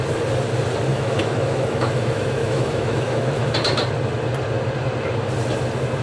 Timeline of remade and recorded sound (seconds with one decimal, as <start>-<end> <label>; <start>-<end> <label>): 0.0-0.9 recorded; 0.9-3.5 remade; 3.5-6.0 recorded